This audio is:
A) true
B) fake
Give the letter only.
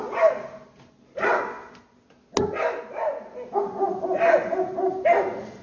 A